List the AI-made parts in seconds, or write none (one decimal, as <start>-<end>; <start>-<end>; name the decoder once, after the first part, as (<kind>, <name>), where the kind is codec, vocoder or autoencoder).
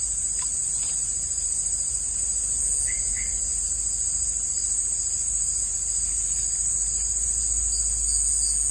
none